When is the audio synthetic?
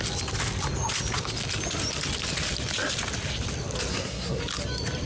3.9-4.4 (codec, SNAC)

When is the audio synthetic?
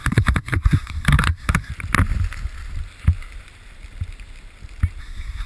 0.0-1.7 (codec, SNAC); 5.0-5.5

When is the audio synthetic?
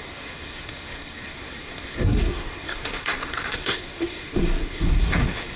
0.0-5.6 (codec, SNAC)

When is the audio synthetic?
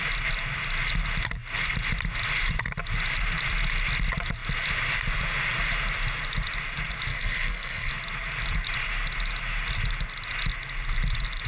7.1-7.9 (codec, SNAC)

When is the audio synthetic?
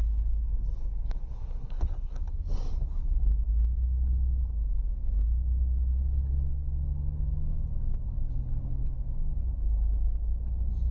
0.4-2.2 (codec, SNAC)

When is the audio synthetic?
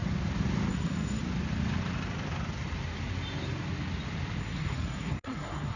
0.7-1.2 (codec, SNAC); 4.4-5.8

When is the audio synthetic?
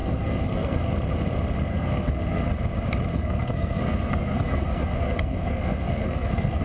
0.0-0.9 (codec, SNAC); 1.7-2.5; 3.1-6.6